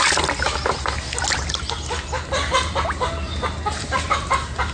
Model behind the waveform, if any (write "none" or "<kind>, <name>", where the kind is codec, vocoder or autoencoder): none